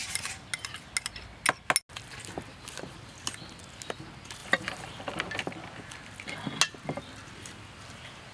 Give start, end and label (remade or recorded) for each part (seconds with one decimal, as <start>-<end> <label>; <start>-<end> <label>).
0.0-4.4 recorded; 4.4-5.4 remade; 5.4-8.3 recorded